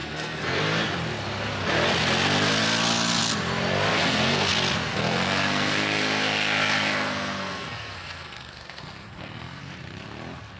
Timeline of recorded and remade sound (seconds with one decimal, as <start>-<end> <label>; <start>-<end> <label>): 0.0-0.6 remade; 0.6-3.9 recorded; 3.9-4.5 remade; 4.5-4.9 recorded; 4.9-9.6 remade; 9.6-10.6 recorded